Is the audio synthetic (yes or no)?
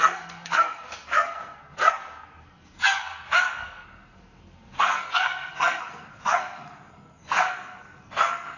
yes